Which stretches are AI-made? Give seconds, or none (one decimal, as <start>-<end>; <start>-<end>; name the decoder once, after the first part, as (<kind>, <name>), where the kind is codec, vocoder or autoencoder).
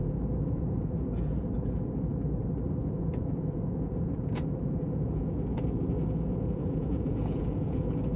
0.0-2.1 (vocoder, Vocos); 2.8-8.2